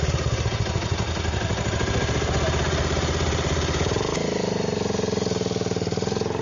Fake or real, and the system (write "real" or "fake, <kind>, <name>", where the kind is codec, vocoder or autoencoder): real